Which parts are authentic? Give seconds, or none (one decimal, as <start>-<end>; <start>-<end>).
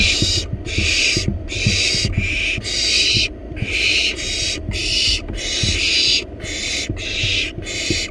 0.0-8.1